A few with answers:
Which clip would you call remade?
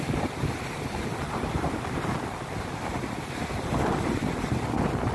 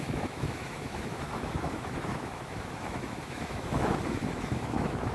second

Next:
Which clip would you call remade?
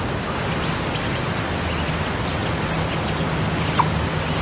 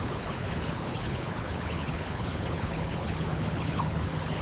second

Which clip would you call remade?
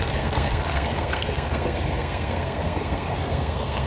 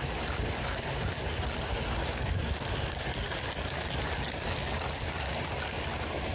first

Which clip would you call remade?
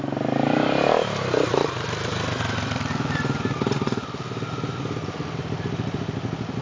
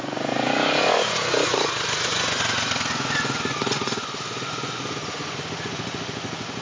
second